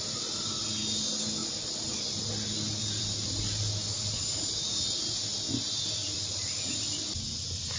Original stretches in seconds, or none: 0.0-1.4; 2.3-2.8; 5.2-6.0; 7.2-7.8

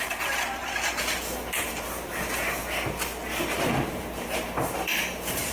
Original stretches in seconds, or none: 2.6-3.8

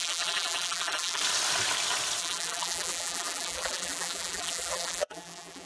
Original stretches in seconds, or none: 1.2-2.2

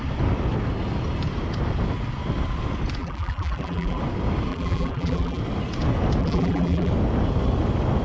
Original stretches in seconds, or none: 0.0-3.0; 4.0-4.5; 5.4-6.2; 6.9-8.0

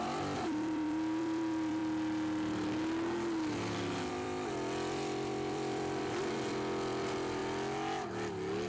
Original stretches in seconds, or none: 1.8-4.1; 7.4-8.7

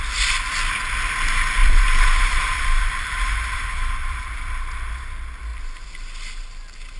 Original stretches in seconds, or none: 0.0-1.6; 4.2-7.0